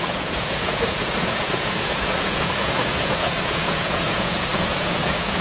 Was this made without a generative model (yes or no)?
no